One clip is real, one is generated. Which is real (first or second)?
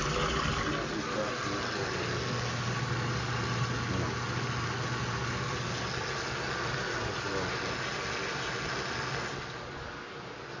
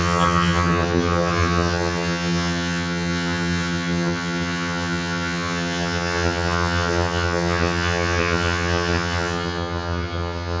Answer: first